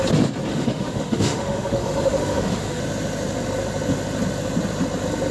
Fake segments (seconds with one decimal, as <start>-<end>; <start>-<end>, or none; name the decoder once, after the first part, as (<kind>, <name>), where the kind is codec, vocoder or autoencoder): 0.5-2.8 (autoencoder, DAC-VAE)